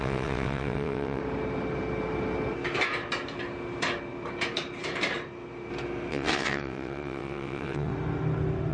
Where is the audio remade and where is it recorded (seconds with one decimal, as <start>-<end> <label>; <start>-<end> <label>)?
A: 0.0-1.2 remade; 1.2-6.1 recorded; 6.1-7.9 remade; 7.9-8.7 recorded